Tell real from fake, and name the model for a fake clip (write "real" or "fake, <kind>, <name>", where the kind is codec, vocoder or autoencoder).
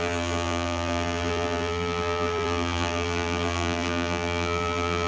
fake, vocoder, BigVGAN v2